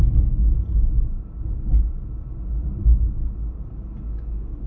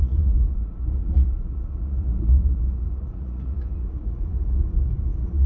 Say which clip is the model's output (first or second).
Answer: second